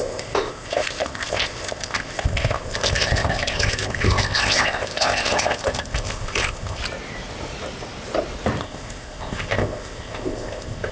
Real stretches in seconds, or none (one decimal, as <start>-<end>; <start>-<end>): 6.8-8.6